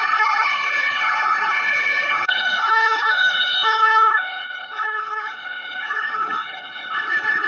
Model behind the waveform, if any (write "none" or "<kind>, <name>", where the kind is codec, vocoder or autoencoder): codec, HILCodec